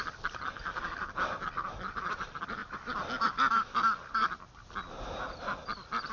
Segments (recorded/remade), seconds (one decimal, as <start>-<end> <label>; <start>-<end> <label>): 0.0-6.1 recorded